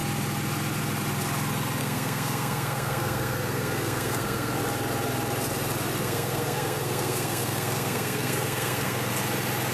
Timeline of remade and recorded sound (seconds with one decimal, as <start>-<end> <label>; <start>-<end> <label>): 0.0-1.8 recorded; 1.8-4.6 remade; 4.6-6.0 recorded; 6.0-9.1 remade; 9.1-9.7 recorded